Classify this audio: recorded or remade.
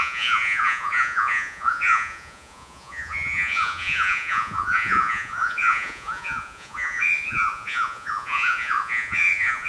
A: remade